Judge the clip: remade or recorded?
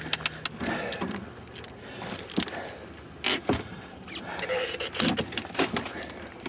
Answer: recorded